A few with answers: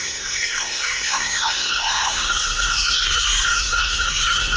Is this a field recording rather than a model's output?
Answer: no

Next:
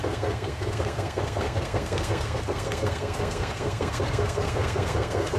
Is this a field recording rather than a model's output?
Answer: no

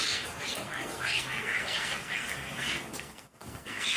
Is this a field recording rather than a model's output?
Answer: no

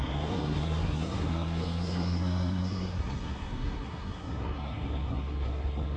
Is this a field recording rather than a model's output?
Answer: no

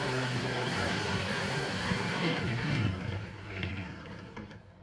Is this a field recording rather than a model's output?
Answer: no